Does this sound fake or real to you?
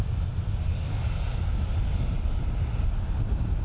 real